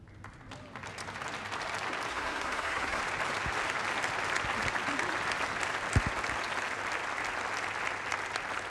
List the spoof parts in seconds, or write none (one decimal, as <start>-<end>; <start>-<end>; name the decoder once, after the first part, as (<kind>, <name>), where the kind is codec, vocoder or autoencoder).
2.1-3.0 (codec, SNAC)